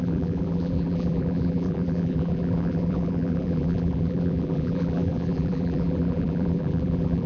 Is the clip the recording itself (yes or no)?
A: no